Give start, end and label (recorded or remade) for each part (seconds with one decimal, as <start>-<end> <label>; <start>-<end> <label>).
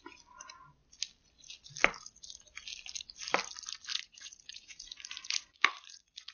0.0-3.9 recorded; 3.9-6.3 remade